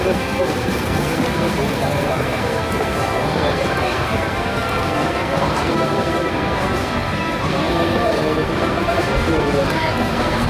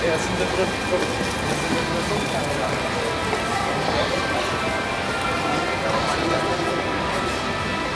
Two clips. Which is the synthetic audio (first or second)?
first